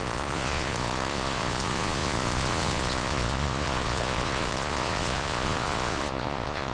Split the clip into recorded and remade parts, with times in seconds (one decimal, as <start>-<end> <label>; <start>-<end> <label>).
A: 0.0-6.7 remade